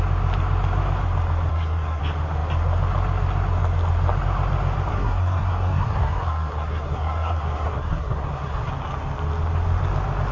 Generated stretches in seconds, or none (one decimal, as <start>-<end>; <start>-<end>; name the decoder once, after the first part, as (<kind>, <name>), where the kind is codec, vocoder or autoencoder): 1.5-2.0 (codec, SNAC); 4.9-8.7